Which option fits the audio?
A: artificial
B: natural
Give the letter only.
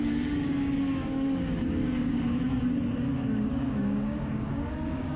A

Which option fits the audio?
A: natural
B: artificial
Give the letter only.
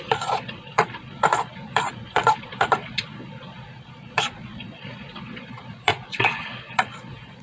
B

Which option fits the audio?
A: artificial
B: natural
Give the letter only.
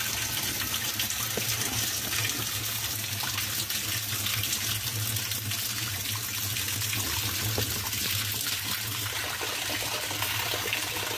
B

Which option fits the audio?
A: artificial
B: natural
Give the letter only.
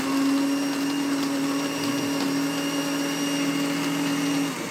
B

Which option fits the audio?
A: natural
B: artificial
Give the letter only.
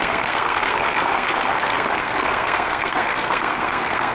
B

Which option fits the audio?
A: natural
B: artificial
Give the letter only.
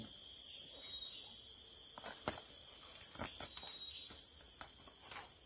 A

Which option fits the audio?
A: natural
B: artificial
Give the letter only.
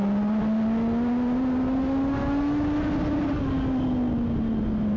A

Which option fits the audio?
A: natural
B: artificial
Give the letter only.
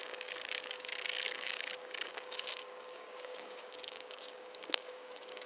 B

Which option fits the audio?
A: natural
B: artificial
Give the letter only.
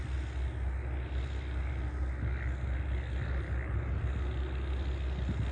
A